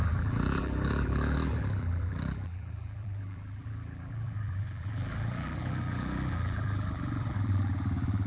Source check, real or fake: fake